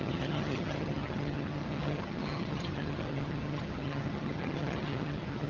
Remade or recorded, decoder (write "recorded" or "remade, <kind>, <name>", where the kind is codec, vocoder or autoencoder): remade, vocoder, HiFi-GAN